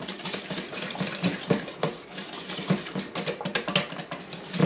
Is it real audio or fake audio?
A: real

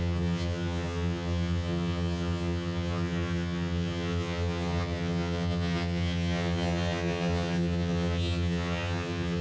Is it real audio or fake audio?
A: fake